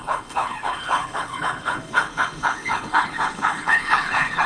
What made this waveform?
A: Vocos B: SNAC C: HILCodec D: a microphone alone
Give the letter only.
C